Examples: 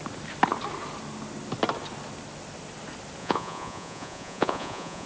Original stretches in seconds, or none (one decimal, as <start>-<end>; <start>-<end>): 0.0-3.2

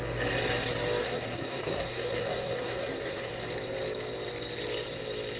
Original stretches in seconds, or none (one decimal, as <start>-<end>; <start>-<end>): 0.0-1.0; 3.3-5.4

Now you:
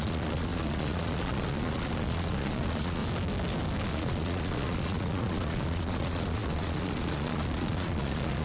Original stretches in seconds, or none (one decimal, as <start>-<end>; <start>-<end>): 3.0-3.9